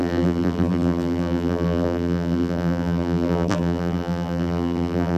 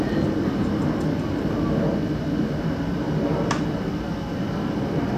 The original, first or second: second